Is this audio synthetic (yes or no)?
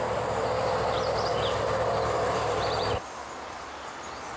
yes